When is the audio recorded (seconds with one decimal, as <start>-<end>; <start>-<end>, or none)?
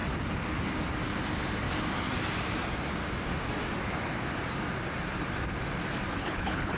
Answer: 0.0-6.2